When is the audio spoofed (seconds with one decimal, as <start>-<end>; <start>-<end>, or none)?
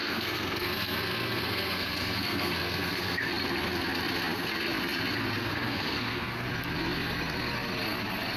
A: 0.0-3.3; 5.5-6.5